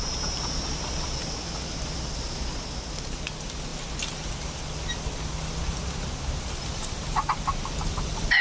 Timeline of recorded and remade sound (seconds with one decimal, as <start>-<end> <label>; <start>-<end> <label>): 0.0-3.7 recorded; 3.7-4.3 remade; 4.3-8.4 recorded